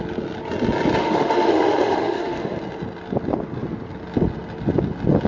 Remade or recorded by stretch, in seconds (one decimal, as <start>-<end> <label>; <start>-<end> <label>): 0.0-1.0 recorded; 1.0-2.6 remade; 2.6-5.3 recorded